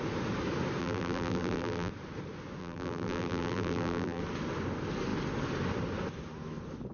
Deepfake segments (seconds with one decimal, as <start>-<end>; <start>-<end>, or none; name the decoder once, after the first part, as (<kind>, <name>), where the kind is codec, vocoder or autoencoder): 0.8-1.9 (vocoder, BigVGAN v2); 2.6-4.2